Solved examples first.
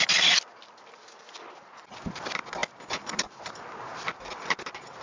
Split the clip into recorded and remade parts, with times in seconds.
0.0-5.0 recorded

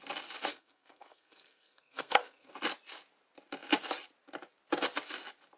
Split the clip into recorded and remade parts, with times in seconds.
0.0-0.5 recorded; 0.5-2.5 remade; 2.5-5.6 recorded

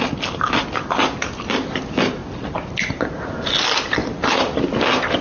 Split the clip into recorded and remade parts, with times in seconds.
0.0-4.0 recorded; 4.0-4.8 remade; 4.8-5.2 recorded

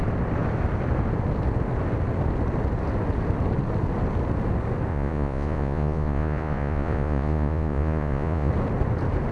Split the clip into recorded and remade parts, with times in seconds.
0.0-4.9 recorded; 4.9-8.5 remade; 8.5-9.3 recorded